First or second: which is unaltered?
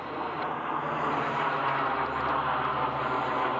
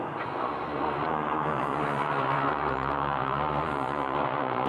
first